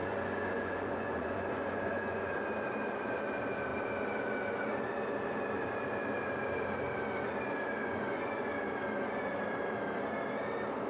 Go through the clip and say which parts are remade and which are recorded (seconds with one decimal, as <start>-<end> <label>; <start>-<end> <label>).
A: 0.0-2.3 remade; 2.3-7.8 recorded; 7.8-8.5 remade; 8.5-10.9 recorded